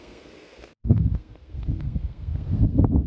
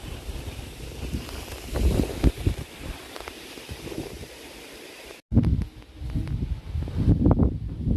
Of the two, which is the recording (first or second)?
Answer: second